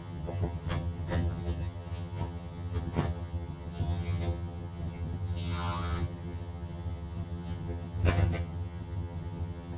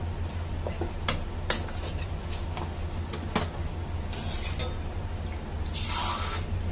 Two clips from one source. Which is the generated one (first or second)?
first